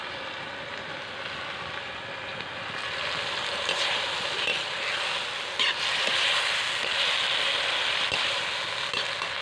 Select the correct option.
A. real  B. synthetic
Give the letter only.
A